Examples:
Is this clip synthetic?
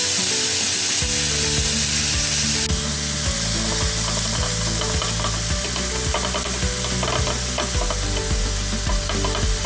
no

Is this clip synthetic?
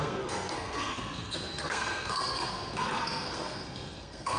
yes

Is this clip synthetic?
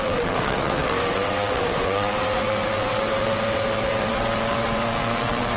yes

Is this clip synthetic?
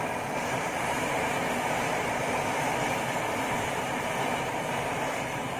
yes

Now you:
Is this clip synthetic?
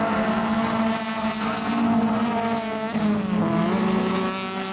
no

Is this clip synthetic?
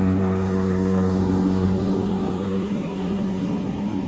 yes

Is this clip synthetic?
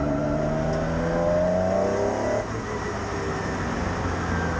no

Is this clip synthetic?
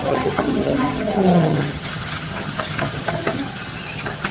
yes